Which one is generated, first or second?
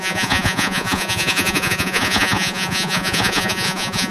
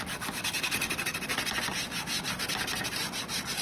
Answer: first